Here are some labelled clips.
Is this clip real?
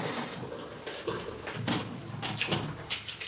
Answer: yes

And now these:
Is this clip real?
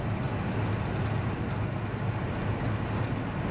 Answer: yes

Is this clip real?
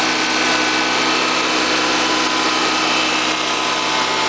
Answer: yes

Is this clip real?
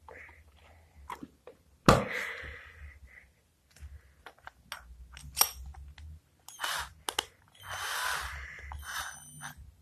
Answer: yes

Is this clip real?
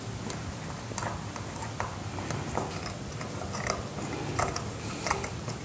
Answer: yes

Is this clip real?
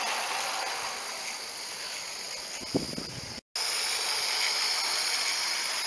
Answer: yes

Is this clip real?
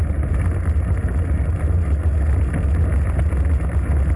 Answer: yes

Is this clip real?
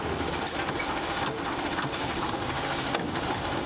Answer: yes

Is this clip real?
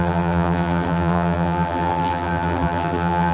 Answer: no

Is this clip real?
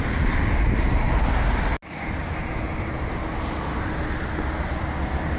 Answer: yes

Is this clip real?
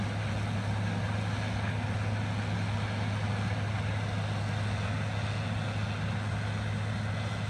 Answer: yes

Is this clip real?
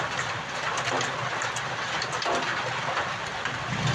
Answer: no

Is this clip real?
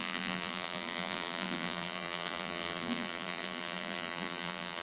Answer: no